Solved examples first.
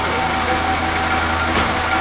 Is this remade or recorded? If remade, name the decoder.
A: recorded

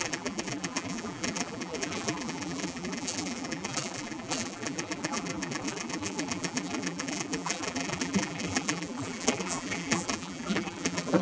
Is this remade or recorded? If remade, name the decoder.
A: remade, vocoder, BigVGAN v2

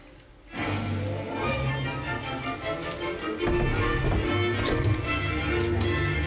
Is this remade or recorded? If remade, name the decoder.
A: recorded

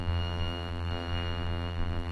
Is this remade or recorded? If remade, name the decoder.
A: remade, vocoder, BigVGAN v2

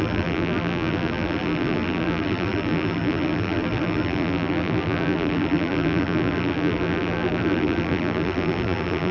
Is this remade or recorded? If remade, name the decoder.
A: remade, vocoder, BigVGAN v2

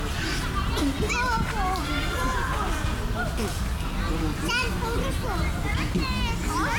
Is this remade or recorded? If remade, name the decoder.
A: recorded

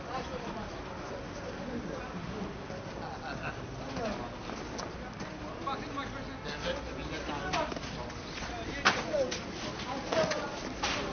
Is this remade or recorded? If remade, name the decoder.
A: recorded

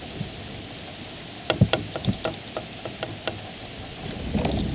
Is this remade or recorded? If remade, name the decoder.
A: recorded